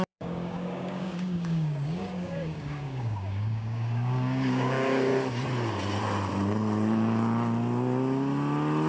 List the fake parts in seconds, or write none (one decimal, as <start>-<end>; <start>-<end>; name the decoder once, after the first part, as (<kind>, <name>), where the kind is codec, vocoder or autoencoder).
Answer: 0.0-5.1 (codec, DAC)